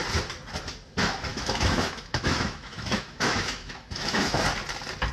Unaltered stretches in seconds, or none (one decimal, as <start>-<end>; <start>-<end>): 0.0-1.3; 4.4-5.1